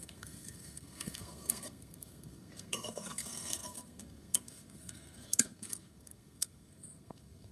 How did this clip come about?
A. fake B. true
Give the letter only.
A